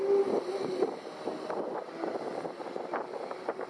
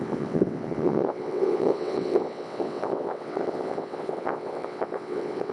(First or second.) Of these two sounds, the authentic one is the first